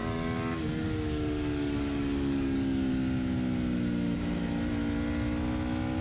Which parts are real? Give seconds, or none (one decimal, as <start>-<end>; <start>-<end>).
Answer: 2.9-6.0